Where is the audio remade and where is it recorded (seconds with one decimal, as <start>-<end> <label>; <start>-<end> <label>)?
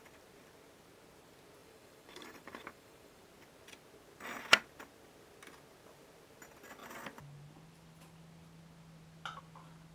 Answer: 0.0-1.6 recorded; 1.6-3.2 remade; 3.2-9.9 recorded